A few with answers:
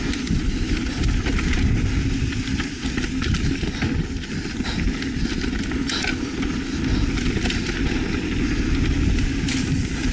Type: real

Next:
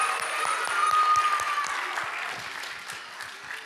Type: real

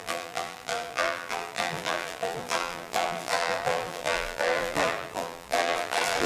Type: fake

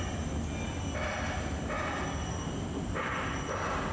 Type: real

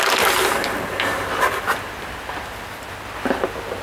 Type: real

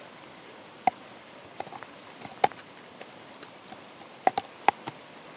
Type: fake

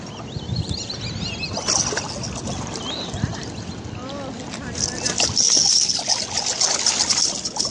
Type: real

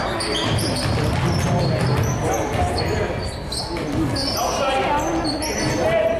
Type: real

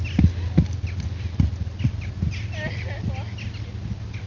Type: real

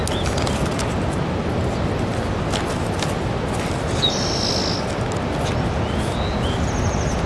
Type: real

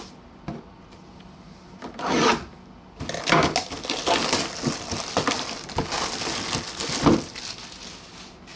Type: real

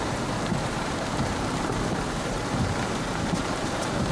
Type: fake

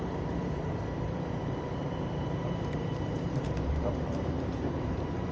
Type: fake